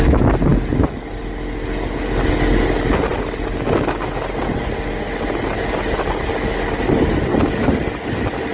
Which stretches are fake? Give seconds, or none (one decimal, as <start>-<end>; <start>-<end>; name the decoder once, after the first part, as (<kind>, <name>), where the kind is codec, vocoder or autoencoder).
none